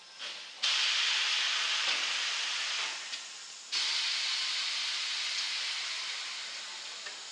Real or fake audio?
real